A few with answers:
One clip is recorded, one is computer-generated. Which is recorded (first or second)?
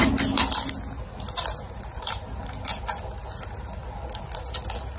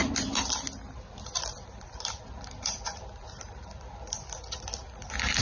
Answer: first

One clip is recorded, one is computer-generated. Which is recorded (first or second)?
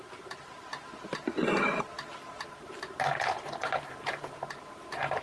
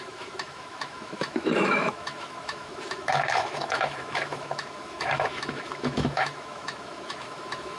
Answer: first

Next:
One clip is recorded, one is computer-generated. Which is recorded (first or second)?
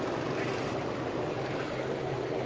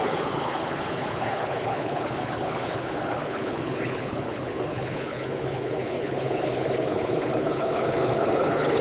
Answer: first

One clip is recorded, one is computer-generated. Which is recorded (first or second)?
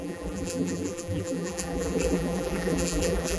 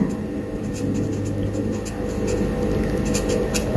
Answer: second